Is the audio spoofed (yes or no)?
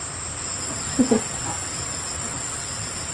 no